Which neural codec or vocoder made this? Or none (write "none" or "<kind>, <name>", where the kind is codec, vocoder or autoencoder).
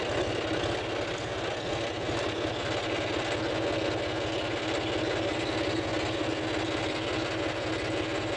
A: none